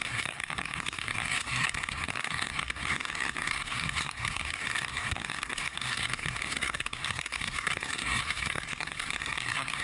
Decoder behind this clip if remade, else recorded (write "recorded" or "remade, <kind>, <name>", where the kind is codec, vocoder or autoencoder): remade, codec, SNAC